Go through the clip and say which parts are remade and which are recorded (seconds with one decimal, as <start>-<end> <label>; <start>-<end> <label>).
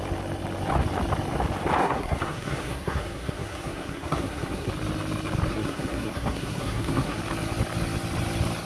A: 0.0-1.8 recorded; 1.8-4.7 remade; 4.7-5.5 recorded; 5.5-7.2 remade; 7.2-8.7 recorded